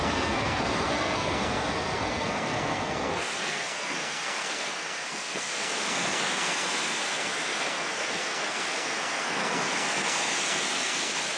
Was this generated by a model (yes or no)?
yes